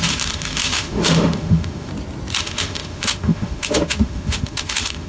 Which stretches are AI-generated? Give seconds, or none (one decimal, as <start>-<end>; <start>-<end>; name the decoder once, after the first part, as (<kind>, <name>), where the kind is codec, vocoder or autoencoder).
0.0-1.9 (autoencoder, DAC-VAE); 2.4-5.1